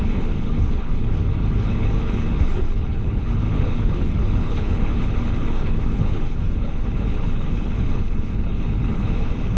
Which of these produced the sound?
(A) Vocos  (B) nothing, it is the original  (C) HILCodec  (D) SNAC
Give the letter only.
C